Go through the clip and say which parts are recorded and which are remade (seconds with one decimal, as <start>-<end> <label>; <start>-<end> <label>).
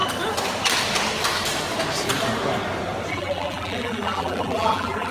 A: 0.0-3.1 recorded; 3.1-5.1 remade